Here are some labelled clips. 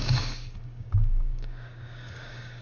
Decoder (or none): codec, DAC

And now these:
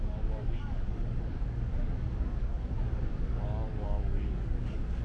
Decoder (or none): codec, DAC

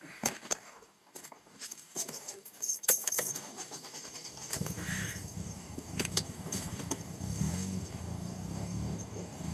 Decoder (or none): codec, DAC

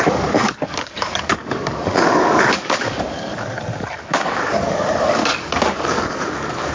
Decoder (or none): codec, DAC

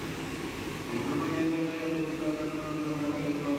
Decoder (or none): codec, DAC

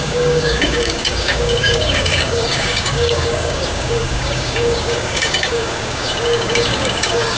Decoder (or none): codec, DAC